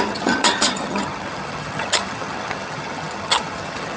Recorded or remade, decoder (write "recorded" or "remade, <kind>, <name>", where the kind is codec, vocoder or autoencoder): remade, vocoder, HiFi-GAN